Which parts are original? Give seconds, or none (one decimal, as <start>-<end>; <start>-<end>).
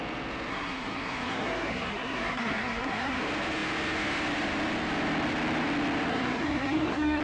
0.0-0.5; 3.2-6.1